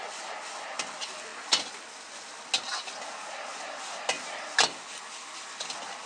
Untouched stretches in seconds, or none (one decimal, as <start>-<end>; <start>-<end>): 0.0-6.1